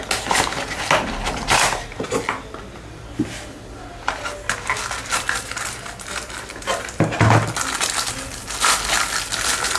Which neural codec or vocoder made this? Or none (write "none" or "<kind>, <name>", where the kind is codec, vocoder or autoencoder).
none